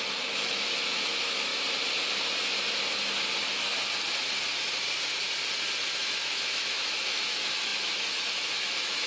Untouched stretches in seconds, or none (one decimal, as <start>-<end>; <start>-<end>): 1.5-6.0